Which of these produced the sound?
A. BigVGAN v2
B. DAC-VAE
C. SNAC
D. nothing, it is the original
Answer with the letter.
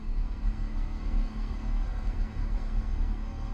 C